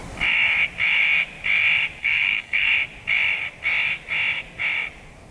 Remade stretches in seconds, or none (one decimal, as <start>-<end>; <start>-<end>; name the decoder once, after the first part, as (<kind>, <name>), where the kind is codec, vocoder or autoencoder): 2.0-2.7 (codec, SNAC)